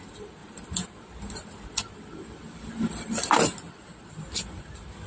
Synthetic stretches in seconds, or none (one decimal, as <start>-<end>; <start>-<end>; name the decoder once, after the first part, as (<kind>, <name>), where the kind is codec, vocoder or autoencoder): none